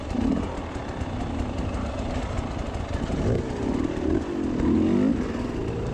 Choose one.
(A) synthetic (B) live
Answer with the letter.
B